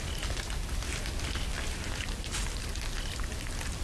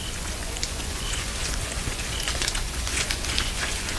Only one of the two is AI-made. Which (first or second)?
second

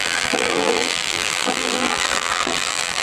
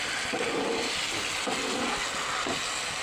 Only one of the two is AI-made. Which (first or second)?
first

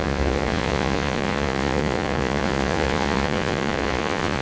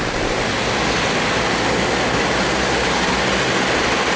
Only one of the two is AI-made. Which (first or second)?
first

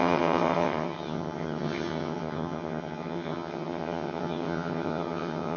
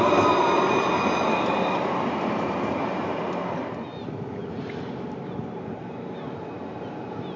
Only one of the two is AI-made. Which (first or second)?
first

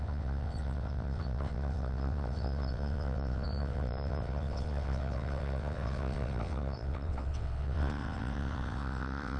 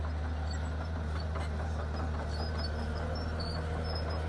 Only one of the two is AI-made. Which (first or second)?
first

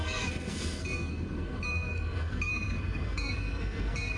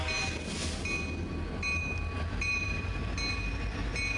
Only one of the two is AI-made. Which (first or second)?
first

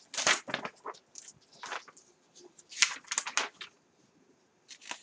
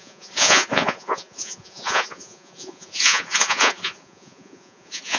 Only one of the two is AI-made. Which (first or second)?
second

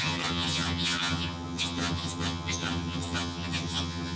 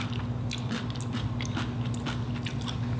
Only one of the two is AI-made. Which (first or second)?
first